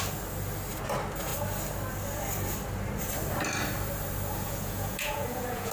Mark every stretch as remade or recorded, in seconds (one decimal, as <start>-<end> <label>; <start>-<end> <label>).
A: 0.0-4.3 recorded; 4.3-5.7 remade